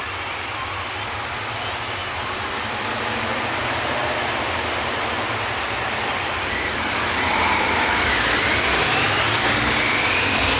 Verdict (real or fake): fake